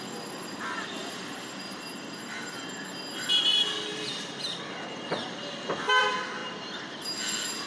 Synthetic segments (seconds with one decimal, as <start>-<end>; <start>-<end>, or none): 1.0-2.8; 3.9-5.3; 6.4-7.0